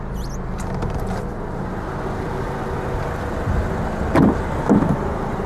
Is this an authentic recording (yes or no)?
yes